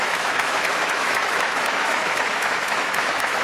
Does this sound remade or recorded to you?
remade